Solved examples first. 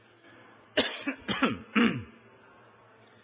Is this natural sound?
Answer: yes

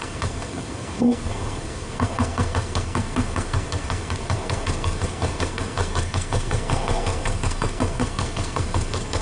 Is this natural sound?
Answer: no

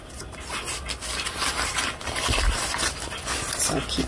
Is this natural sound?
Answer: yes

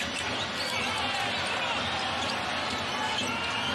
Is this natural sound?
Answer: yes